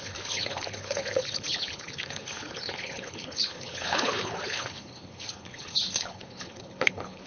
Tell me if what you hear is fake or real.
fake